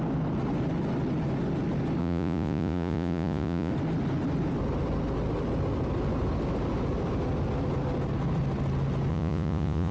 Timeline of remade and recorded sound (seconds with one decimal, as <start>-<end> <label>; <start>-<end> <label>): 0.0-2.0 recorded; 2.0-3.7 remade; 3.7-9.1 recorded; 9.1-9.9 remade